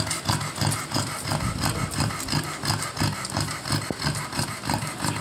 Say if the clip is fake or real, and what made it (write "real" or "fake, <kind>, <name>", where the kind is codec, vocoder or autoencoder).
real